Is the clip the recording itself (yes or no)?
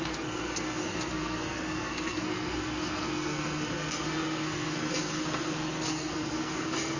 no